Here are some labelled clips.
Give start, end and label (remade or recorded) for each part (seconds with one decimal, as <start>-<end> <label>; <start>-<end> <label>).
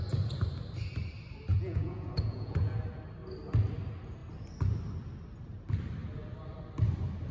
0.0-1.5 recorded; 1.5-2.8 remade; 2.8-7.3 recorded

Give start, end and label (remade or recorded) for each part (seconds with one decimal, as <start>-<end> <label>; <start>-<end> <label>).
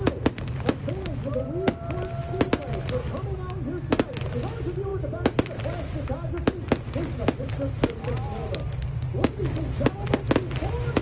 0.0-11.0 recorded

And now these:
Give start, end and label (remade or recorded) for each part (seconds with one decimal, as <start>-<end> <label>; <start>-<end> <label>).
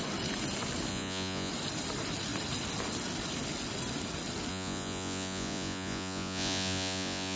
0.0-0.9 recorded; 0.9-1.5 remade; 1.5-4.5 recorded; 4.5-7.4 remade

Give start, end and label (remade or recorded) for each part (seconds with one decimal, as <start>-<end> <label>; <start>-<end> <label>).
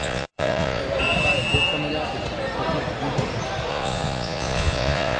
0.0-0.8 remade; 0.8-3.7 recorded; 3.7-5.2 remade